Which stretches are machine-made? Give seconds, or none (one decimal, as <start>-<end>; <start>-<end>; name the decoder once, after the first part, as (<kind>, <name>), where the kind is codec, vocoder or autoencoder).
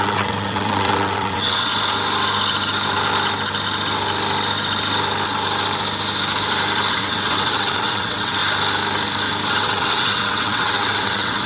0.0-1.7 (vocoder, WaveNeXt); 6.9-8.4; 9.5-11.5